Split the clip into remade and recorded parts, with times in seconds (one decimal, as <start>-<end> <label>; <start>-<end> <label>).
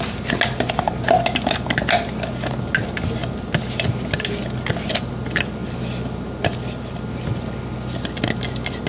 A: 0.0-8.9 recorded